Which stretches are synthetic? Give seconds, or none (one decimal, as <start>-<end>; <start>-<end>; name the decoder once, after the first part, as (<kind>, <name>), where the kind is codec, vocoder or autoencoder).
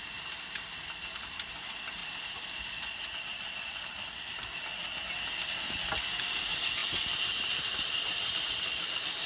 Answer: 2.0-4.6 (vocoder, BigVGAN v2); 6.8-9.3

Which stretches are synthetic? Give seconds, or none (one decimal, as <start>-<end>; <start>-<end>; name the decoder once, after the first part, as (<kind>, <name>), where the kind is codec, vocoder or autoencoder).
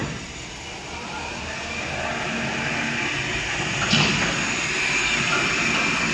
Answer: 0.0-3.7 (vocoder, BigVGAN v2)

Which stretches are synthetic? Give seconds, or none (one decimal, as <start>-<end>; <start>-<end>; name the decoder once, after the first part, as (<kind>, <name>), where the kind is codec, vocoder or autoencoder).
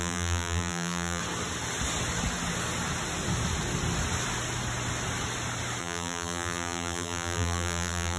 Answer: 0.0-1.2 (vocoder, BigVGAN v2); 5.8-8.2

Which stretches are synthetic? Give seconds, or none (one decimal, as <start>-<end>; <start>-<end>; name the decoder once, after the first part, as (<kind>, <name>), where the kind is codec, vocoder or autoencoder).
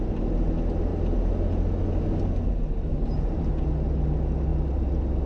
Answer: 2.9-3.5 (vocoder, BigVGAN v2)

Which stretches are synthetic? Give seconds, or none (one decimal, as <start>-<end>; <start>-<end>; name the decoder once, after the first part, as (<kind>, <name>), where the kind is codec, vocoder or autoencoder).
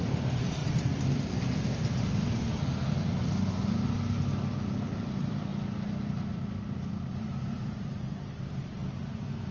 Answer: 0.0-0.6 (vocoder, BigVGAN v2); 4.9-5.5; 7.1-8.8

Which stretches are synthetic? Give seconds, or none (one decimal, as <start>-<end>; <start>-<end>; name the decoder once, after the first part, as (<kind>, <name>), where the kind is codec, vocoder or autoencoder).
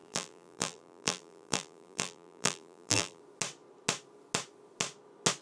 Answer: 0.0-3.2 (vocoder, BigVGAN v2)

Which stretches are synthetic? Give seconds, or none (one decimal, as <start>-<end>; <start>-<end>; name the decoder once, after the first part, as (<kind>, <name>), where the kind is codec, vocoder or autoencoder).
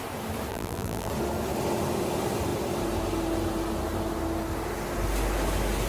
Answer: 0.5-1.1 (vocoder, BigVGAN v2)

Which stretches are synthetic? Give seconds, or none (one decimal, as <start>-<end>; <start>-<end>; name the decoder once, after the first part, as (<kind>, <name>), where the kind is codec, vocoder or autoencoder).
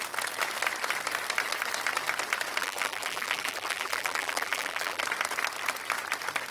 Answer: 2.6-5.0 (vocoder, BigVGAN v2)